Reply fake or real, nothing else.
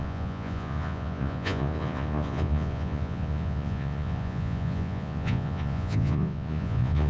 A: fake